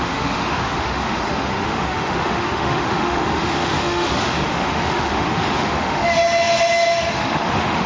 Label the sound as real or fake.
fake